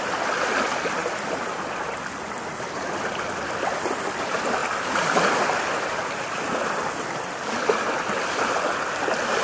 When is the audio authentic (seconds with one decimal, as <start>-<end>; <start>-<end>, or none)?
0.0-9.4